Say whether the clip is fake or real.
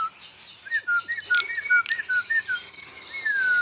real